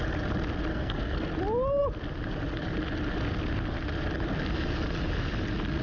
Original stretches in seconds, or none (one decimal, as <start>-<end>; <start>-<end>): 0.0-0.7; 1.3-5.8